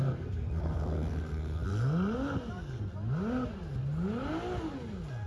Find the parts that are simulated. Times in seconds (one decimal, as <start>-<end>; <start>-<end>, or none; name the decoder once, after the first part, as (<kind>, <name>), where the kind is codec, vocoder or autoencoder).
0.0-1.7 (codec, SNAC)